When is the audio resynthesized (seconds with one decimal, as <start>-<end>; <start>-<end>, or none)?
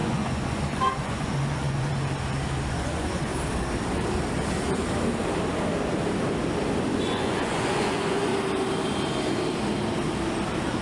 0.0-1.9; 2.7-3.3; 6.9-8.3